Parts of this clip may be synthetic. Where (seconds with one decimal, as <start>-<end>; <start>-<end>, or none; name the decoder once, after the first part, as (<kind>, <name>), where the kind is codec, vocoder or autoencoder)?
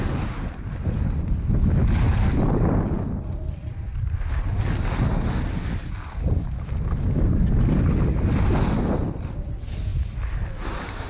none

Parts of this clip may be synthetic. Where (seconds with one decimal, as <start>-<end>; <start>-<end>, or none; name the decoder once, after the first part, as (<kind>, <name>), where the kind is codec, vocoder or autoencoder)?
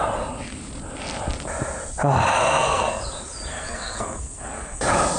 2.3-3.0 (codec, SNAC); 3.5-4.8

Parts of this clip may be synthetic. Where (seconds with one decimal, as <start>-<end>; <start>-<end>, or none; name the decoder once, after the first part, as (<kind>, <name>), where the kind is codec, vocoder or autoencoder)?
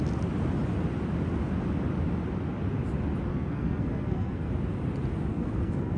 3.3-4.5 (codec, SNAC); 5.3-6.0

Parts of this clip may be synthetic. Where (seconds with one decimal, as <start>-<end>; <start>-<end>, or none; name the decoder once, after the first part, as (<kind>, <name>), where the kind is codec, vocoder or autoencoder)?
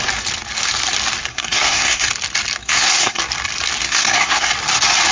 1.3-2.1 (codec, SNAC); 2.6-3.2; 3.8-4.5